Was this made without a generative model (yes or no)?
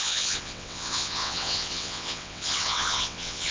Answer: no